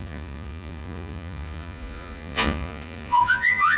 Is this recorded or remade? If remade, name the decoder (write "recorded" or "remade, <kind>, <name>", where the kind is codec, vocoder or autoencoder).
remade, vocoder, Vocos